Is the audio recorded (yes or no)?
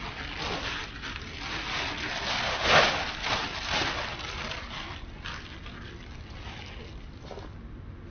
yes